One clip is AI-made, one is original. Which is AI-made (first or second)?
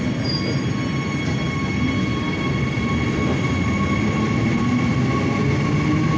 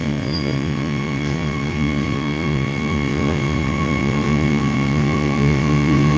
second